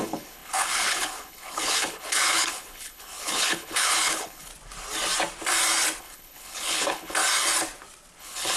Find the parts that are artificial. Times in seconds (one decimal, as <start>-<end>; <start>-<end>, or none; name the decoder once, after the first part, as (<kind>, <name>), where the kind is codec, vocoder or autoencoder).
0.0-4.5 (codec, HILCodec); 6.0-7.2; 8.2-8.6